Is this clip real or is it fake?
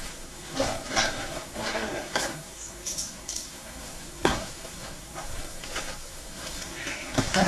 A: fake